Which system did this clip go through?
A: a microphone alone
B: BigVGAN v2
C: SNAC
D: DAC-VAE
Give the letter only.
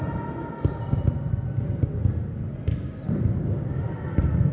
A